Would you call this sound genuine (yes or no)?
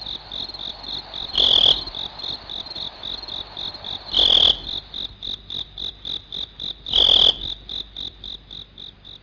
yes